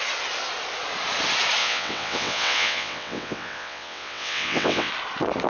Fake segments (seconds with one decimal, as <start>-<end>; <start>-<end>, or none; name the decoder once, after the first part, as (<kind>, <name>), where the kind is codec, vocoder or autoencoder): 1.6-4.9 (vocoder, WaveNeXt)